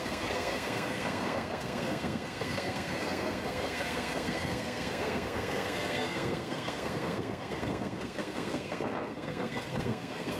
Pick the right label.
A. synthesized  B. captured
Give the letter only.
A